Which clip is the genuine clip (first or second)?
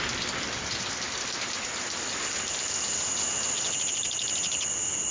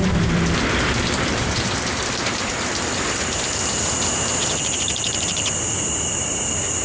first